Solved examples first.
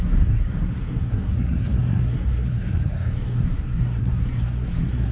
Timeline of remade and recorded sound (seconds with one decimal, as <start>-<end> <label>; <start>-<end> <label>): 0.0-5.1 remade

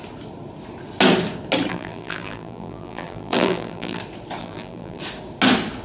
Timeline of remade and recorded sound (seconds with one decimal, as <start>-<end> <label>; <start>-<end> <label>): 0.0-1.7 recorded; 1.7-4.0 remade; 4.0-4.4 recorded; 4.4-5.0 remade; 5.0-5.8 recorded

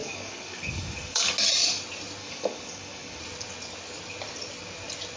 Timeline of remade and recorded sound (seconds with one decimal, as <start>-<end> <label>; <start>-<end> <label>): 0.0-1.3 remade; 1.3-2.2 recorded; 2.2-3.2 remade; 3.2-5.2 recorded

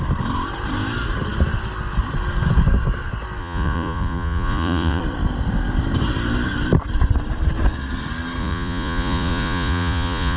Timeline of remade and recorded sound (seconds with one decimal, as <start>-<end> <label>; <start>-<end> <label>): 0.0-3.4 recorded; 3.4-5.0 remade; 5.0-8.4 recorded; 8.4-10.4 remade

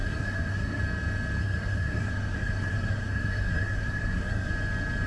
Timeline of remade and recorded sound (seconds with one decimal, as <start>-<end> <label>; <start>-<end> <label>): 0.0-0.8 remade; 0.8-1.4 recorded; 1.4-4.5 remade; 4.5-5.1 recorded

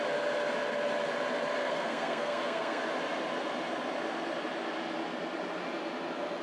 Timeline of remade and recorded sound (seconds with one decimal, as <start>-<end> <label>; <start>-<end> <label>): 0.0-1.6 recorded; 1.6-2.8 remade; 2.8-6.4 recorded